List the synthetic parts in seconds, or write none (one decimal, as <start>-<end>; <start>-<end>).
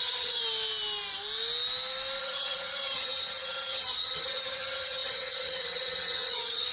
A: 0.0-0.4; 2.2-6.7